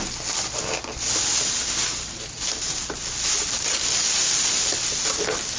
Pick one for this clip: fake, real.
real